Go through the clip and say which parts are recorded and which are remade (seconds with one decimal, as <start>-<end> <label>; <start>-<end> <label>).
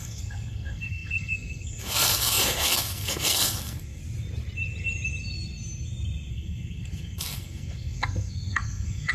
0.0-4.0 remade; 4.0-6.3 recorded; 6.3-9.1 remade